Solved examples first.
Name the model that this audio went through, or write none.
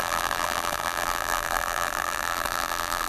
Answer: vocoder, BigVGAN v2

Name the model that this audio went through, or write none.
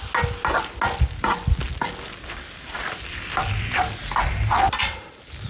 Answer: none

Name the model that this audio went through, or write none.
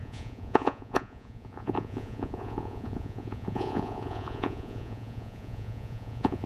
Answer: vocoder, Vocos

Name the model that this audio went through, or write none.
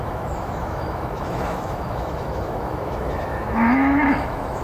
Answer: autoencoder, DAC-VAE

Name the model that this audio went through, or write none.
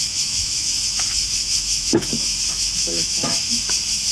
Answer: autoencoder, DAC-VAE